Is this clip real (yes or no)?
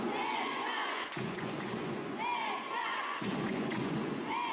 no